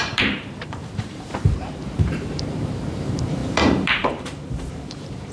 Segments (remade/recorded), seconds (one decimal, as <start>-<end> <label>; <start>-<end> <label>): 0.0-5.3 remade